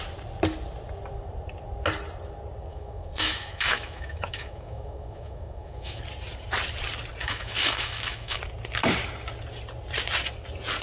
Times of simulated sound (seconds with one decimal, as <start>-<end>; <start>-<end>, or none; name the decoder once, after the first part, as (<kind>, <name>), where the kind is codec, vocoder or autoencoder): 2.7-6.0 (autoencoder, DAC-VAE); 7.2-8.4